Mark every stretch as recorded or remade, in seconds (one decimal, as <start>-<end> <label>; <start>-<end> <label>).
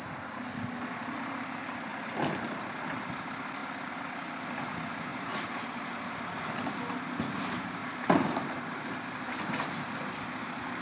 0.0-1.9 recorded; 1.9-3.1 remade; 3.1-5.1 recorded; 5.1-5.8 remade; 5.8-7.8 recorded; 7.8-9.7 remade; 9.7-10.8 recorded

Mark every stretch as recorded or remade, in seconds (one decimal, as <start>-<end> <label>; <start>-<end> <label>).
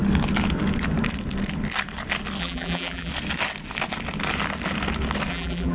0.0-2.4 recorded; 2.4-3.1 remade; 3.1-5.3 recorded; 5.3-5.7 remade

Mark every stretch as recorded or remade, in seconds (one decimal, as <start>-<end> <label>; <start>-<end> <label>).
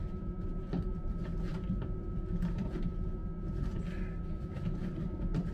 0.0-3.2 remade; 3.2-4.2 recorded; 4.2-5.5 remade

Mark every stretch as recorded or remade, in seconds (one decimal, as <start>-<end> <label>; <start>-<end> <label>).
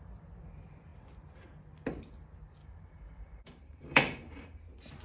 0.0-2.6 recorded; 2.6-4.6 remade; 4.6-5.0 recorded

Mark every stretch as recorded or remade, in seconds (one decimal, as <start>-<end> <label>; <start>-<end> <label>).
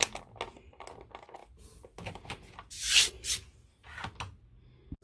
0.0-1.4 recorded; 1.4-3.1 remade; 3.1-5.0 recorded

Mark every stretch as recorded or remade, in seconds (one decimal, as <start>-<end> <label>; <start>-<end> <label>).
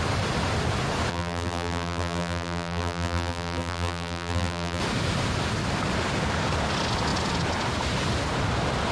0.0-1.1 recorded; 1.1-4.8 remade; 4.8-8.9 recorded